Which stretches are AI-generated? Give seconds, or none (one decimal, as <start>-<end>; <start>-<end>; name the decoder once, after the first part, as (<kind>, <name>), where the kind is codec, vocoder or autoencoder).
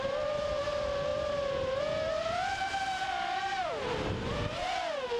0.0-5.2 (vocoder, BigVGAN v2)